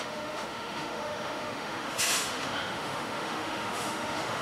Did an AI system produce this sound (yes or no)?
yes